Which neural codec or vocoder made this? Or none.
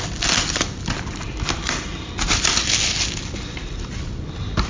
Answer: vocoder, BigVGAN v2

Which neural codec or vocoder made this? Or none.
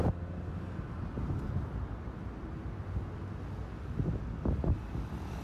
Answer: none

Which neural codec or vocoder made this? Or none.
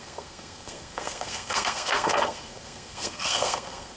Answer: codec, SNAC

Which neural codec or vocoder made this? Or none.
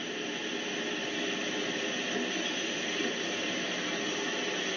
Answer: none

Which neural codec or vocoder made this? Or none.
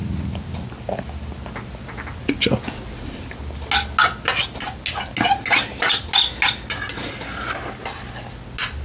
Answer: none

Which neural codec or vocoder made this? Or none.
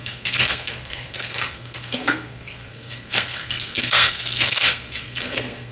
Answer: codec, SNAC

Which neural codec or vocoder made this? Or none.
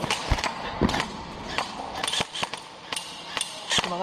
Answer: none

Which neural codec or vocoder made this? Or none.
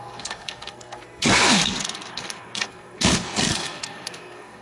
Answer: codec, SNAC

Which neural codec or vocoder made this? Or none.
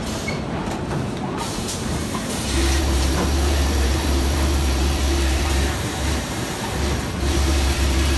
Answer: vocoder, BigVGAN v2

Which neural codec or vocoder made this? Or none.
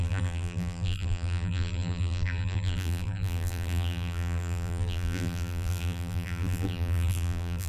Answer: vocoder, BigVGAN v2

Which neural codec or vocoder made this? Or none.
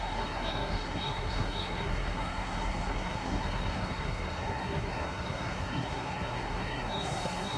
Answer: codec, SNAC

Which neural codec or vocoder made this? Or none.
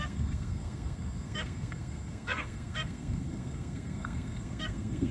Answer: codec, SNAC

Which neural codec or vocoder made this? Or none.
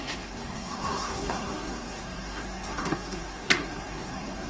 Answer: codec, SNAC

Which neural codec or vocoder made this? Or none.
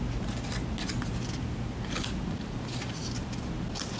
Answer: none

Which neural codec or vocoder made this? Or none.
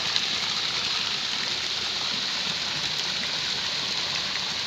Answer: none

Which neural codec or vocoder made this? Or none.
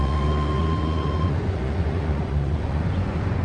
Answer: vocoder, Vocos